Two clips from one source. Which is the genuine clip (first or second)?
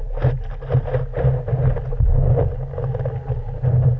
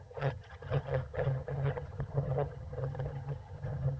first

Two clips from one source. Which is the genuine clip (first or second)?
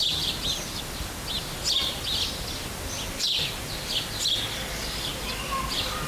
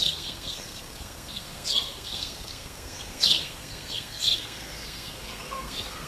first